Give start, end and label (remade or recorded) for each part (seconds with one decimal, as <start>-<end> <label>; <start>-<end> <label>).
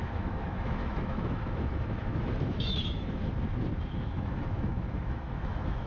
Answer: 0.0-3.2 remade; 3.2-3.9 recorded; 3.9-5.9 remade